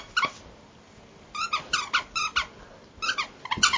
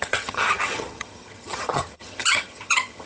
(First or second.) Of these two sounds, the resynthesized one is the second